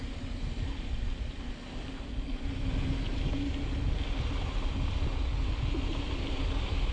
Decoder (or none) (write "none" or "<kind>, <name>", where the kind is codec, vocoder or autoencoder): none